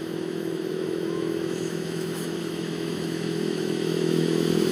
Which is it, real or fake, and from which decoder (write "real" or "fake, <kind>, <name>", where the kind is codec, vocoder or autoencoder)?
fake, autoencoder, DAC-VAE